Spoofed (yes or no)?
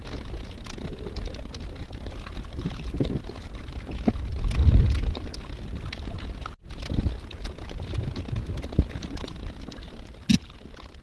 no